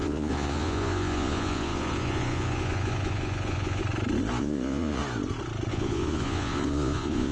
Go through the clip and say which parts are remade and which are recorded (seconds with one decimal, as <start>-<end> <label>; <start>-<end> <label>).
0.0-3.8 remade; 3.8-4.4 recorded; 4.4-5.0 remade; 5.0-5.7 recorded; 5.7-7.3 remade